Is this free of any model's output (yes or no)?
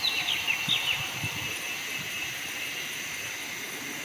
yes